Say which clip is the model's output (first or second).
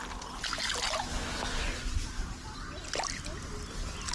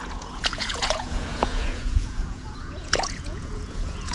second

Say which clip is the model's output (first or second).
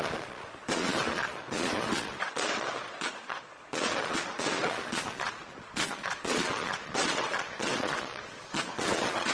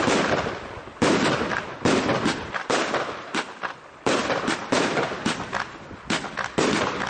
first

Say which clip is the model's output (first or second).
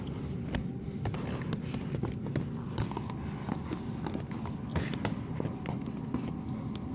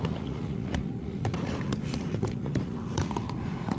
second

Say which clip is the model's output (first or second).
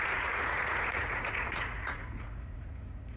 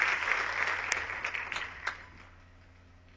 first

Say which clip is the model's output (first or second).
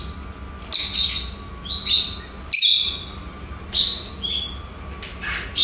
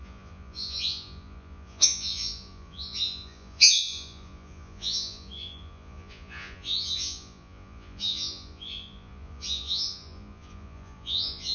second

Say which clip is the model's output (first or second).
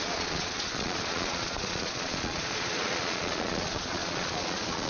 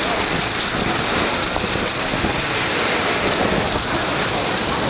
first